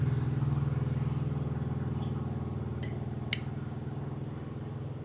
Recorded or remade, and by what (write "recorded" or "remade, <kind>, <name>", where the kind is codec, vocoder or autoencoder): recorded